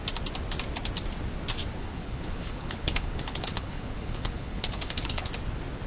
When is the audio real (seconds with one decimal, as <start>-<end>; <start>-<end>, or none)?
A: 0.0-1.8; 5.3-5.9